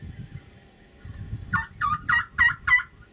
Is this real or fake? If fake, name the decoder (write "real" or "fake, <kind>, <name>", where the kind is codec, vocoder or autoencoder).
real